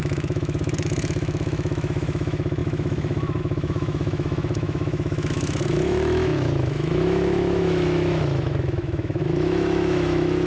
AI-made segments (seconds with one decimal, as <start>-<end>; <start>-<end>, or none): 0.0-10.5